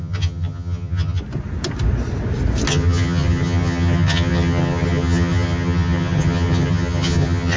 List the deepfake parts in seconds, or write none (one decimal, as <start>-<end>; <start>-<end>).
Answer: 0.0-1.2; 2.7-7.6